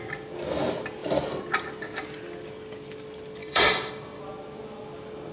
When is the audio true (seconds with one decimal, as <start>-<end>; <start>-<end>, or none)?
0.0-3.4; 4.2-5.3